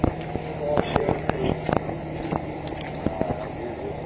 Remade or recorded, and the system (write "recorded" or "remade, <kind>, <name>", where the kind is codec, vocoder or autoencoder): recorded